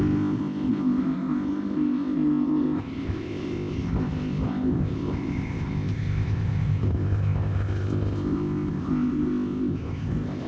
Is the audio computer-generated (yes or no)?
yes